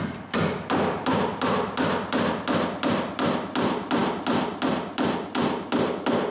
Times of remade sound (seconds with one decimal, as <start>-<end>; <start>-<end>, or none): none

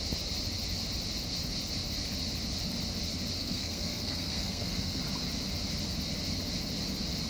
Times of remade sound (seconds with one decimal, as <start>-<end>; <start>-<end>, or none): 3.4-5.0

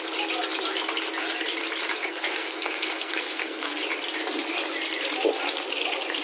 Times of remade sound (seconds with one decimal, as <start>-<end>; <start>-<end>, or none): 2.0-3.8